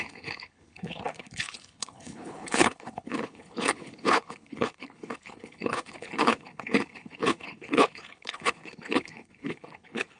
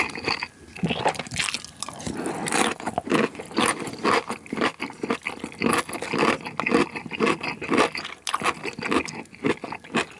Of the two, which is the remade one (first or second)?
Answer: first